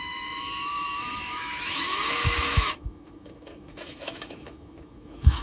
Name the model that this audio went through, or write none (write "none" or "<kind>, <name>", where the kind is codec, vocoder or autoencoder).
autoencoder, DAC-VAE